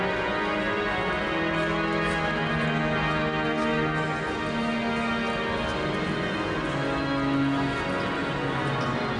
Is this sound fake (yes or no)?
no